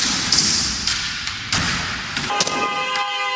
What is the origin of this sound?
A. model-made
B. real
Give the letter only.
B